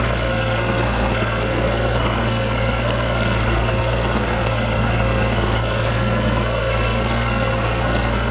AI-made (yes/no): yes